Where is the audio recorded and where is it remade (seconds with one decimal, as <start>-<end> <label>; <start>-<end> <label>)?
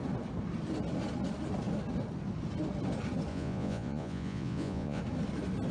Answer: 0.0-3.3 recorded; 3.3-5.0 remade; 5.0-5.7 recorded